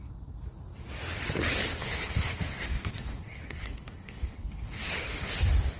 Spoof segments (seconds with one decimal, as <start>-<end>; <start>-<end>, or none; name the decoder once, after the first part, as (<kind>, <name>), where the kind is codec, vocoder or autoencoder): 1.7-5.2 (codec, HILCodec)